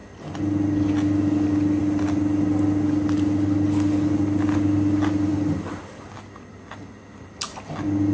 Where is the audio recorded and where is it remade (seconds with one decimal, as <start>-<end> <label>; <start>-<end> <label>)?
0.0-8.1 recorded